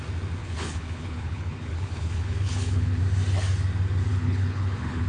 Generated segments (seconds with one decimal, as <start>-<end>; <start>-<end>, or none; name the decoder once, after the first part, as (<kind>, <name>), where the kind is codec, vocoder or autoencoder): 0.4-3.0 (codec, HILCodec); 4.1-5.1